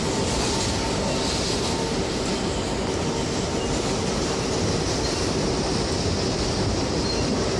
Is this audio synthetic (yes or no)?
no